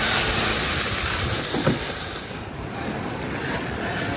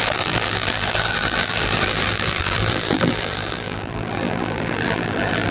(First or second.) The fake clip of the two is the second